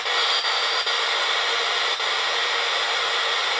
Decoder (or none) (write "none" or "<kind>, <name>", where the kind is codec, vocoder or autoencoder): none